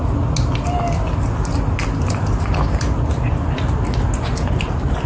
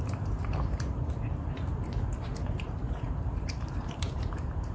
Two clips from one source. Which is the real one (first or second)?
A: first